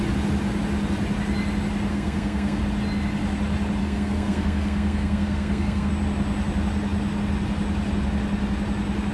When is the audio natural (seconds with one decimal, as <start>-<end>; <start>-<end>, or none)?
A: 0.0-1.9; 2.6-3.8; 5.9-9.1